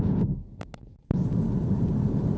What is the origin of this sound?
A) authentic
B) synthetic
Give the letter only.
A